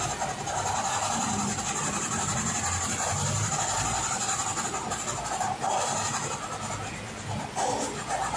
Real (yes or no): yes